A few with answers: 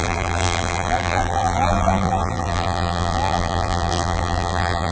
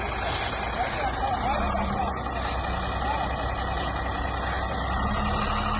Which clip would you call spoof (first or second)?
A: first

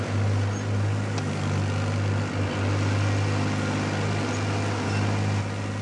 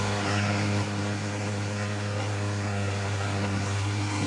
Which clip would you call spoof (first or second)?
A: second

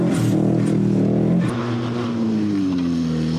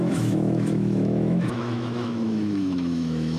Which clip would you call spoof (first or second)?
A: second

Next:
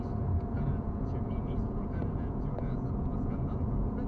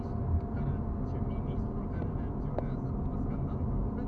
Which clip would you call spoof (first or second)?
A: first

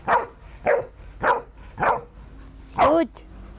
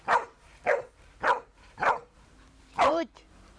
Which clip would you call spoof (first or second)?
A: second